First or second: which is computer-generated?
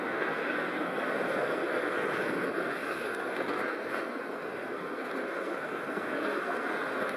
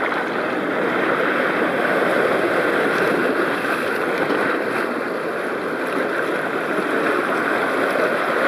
first